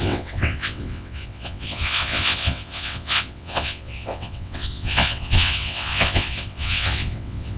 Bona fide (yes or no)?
no